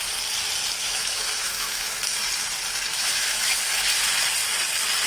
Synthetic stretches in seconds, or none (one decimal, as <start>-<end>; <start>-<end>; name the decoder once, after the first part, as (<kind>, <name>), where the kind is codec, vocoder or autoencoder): 0.8-2.2 (autoencoder, DAC-VAE); 2.9-3.6

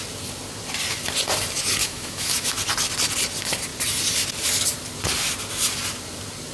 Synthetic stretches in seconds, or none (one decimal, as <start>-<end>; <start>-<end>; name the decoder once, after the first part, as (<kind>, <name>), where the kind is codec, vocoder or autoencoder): 1.8-2.6 (autoencoder, DAC-VAE)

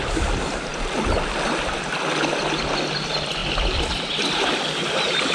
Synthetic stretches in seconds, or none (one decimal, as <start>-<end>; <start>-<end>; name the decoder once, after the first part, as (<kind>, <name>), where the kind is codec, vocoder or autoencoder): none

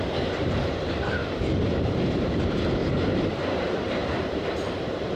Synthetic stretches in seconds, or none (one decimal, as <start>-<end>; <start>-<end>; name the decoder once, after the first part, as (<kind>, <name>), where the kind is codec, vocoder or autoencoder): 0.0-2.8 (vocoder, BigVGAN v2); 3.6-5.2